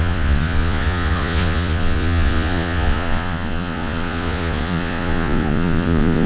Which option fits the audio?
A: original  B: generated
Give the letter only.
B